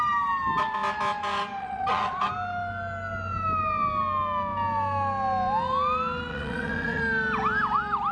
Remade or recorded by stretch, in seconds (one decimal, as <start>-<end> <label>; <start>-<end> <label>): 0.0-1.6 recorded; 1.6-2.3 remade; 2.3-6.3 recorded; 6.3-7.0 remade; 7.0-8.1 recorded